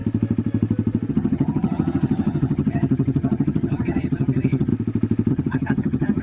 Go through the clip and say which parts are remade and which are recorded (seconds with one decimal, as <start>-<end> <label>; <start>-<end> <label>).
0.0-1.1 recorded; 1.1-4.7 remade; 4.7-5.3 recorded; 5.3-6.2 remade

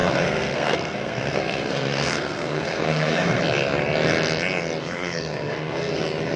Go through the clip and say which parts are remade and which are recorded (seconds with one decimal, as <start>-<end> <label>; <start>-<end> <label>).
0.0-3.4 remade; 3.4-4.8 recorded; 4.8-6.0 remade; 6.0-6.4 recorded

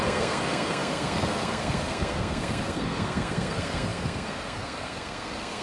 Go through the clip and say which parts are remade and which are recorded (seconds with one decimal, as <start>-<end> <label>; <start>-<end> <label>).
0.0-5.6 remade

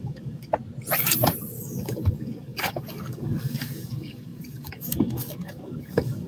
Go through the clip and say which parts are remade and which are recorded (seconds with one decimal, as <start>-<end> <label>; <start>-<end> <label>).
0.0-0.5 remade; 0.5-1.6 recorded; 1.6-6.3 remade